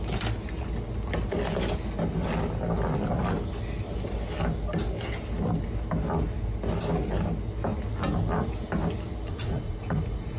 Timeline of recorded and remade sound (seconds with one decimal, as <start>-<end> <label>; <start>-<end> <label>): 0.0-9.3 recorded; 9.3-10.4 remade